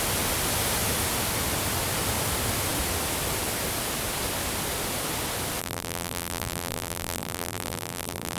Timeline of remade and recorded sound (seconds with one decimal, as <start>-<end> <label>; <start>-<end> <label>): 0.0-5.6 recorded; 5.6-8.4 remade